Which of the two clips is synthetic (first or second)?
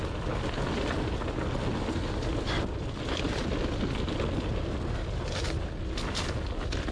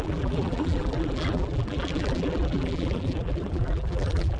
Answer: second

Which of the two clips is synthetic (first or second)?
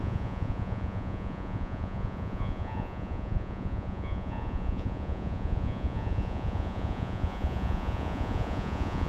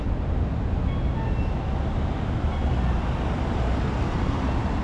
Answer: first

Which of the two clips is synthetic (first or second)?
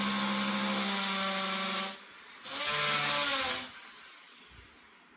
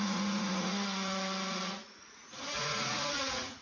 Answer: second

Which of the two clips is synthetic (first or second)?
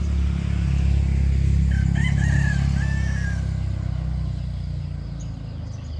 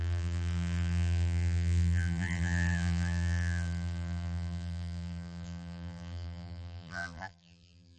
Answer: second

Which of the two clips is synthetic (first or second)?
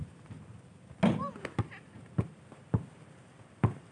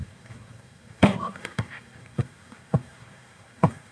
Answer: second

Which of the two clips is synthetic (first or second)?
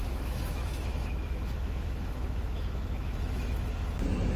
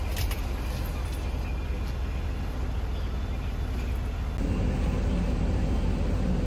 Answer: first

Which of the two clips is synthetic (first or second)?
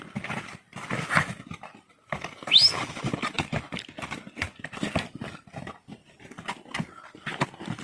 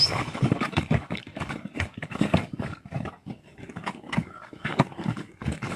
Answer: second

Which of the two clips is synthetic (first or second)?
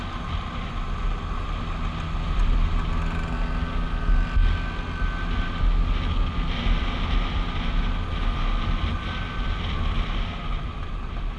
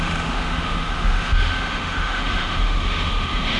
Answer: second